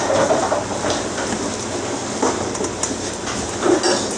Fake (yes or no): no